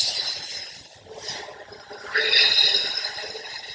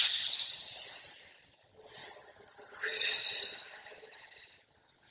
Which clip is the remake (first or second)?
second